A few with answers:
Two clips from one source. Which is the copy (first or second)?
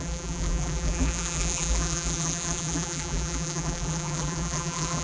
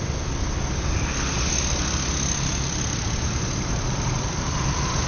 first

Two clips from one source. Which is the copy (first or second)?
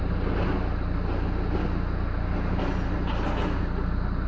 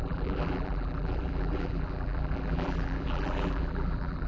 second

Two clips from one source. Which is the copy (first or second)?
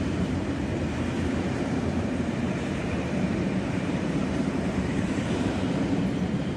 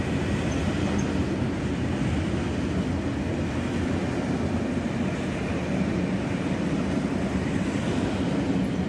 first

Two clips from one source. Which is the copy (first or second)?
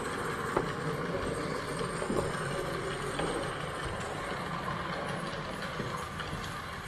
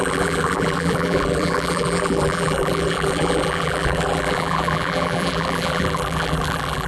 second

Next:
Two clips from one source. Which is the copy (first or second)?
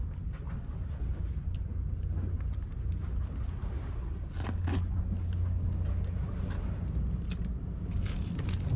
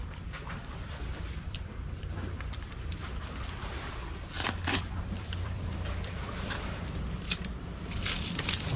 second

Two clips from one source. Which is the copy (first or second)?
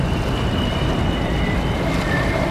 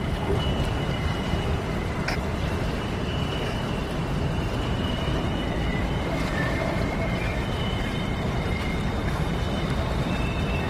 second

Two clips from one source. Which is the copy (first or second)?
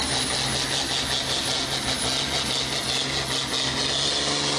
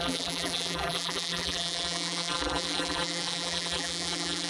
second